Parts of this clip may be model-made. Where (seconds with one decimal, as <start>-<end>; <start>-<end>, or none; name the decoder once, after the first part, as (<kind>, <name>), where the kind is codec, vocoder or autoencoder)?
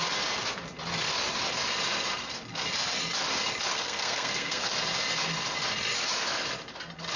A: 3.7-4.7 (codec, SNAC)